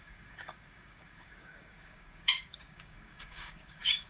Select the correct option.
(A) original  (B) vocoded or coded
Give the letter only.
B